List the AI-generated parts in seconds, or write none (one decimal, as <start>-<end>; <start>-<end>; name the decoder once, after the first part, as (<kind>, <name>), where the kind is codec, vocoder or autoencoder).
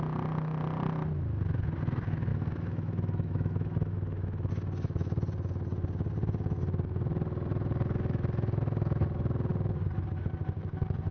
2.3-4.5 (autoencoder, DAC-VAE)